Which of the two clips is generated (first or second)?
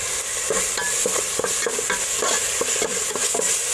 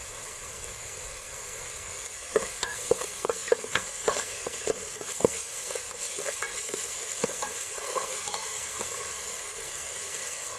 second